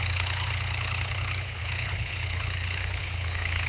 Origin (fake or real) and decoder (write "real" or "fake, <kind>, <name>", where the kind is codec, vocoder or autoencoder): fake, codec, HILCodec